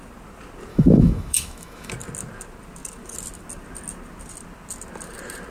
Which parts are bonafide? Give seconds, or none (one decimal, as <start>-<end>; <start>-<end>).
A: 0.0-0.7; 1.9-5.5